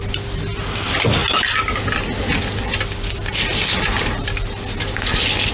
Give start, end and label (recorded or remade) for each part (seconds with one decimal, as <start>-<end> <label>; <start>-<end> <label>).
0.0-5.5 recorded